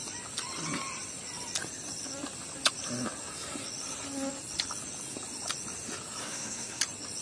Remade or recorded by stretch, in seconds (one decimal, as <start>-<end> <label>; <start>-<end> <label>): 0.0-6.2 recorded; 6.2-6.8 remade; 6.8-7.2 recorded